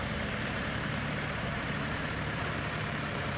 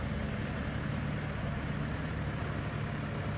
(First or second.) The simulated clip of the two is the first